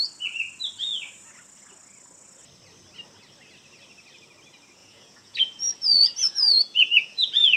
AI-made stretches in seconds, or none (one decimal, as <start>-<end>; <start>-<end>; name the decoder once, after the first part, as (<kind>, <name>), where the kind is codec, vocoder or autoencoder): 4.8-7.6 (vocoder, Vocos)